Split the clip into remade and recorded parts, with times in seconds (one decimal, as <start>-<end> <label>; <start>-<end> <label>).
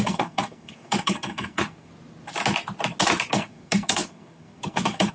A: 0.0-1.9 remade; 1.9-3.3 recorded; 3.3-5.1 remade